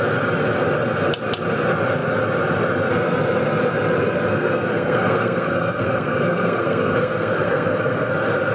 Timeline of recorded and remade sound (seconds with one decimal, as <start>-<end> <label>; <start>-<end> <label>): 0.0-4.3 recorded; 4.3-8.1 remade; 8.1-8.5 recorded